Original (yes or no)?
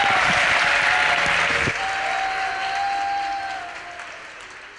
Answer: yes